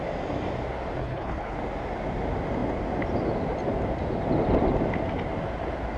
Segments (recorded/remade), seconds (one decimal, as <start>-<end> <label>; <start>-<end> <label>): 0.0-1.0 recorded; 1.0-1.6 remade; 1.6-6.0 recorded